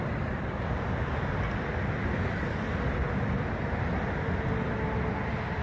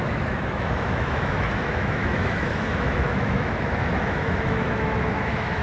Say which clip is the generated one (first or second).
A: second